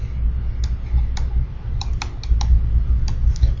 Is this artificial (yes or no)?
no